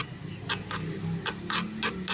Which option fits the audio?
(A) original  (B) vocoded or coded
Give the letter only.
A